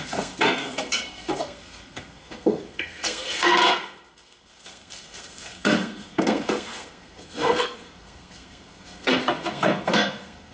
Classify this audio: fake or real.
fake